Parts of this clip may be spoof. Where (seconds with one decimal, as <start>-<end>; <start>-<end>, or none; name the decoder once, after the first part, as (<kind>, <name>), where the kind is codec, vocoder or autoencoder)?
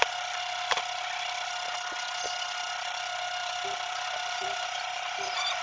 3.4-5.6 (vocoder, BigVGAN v2)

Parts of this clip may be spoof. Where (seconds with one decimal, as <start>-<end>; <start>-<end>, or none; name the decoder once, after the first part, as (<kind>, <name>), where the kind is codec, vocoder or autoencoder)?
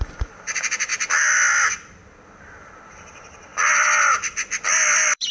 0.0-0.9 (vocoder, BigVGAN v2); 2.9-3.5; 4.6-5.3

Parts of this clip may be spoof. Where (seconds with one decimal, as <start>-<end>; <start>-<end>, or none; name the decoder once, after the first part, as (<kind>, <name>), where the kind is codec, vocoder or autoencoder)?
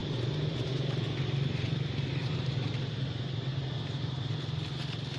0.0-1.1 (vocoder, BigVGAN v2); 2.1-2.7; 3.5-4.2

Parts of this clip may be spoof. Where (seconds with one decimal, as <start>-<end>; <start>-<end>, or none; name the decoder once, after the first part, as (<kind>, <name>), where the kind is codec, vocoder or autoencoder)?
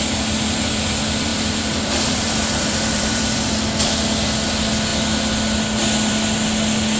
1.3-3.6 (vocoder, BigVGAN v2)